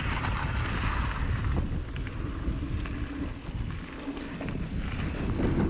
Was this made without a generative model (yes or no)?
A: yes